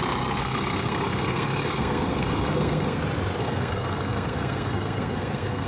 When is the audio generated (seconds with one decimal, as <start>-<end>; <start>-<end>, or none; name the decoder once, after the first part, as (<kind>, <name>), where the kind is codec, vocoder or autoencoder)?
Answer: 0.4-3.0 (codec, SNAC); 3.4-5.7